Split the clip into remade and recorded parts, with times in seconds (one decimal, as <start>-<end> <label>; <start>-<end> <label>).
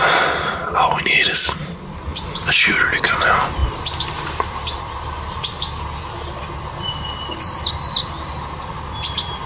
0.0-9.5 recorded